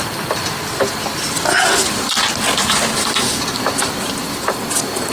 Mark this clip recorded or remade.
recorded